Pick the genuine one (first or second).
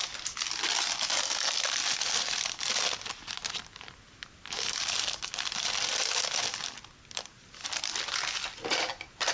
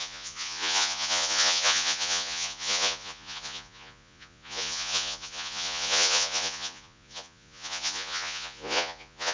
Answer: first